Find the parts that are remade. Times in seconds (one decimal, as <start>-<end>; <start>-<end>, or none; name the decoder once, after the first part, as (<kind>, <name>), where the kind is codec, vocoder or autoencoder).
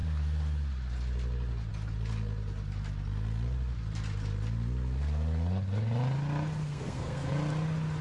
6.6-7.3 (codec, SNAC)